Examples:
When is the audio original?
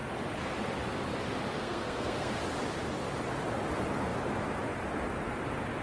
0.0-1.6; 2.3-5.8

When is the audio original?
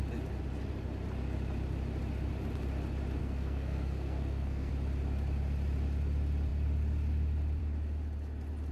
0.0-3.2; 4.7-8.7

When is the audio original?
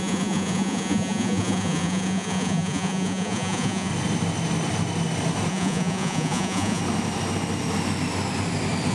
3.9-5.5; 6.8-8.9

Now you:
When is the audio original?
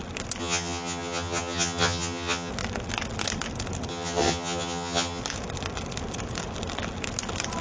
0.0-0.4; 2.5-3.9; 5.2-7.6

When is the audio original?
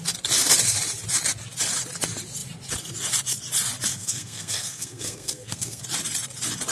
0.0-3.9; 5.8-6.7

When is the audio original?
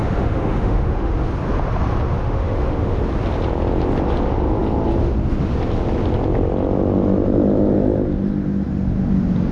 1.1-2.2; 3.0-9.5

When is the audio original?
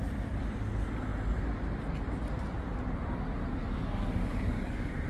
0.0-3.6